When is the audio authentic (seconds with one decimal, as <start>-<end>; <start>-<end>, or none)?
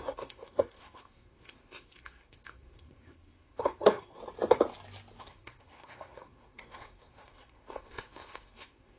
4.2-5.2